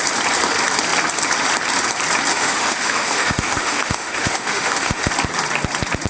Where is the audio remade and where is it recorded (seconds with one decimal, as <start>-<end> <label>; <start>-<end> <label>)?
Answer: 0.0-2.3 recorded; 2.3-5.1 remade; 5.1-6.1 recorded